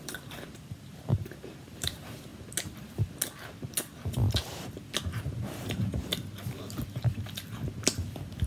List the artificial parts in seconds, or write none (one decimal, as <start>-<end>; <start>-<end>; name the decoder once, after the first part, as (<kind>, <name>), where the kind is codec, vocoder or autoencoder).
0.0-2.3 (vocoder, BigVGAN v2); 5.0-6.1